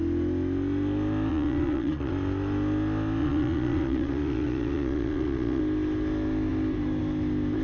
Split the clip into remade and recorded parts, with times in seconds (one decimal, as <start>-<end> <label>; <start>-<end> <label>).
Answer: 0.0-1.3 recorded; 1.3-2.1 remade; 2.1-3.2 recorded; 3.2-5.6 remade; 5.6-7.6 recorded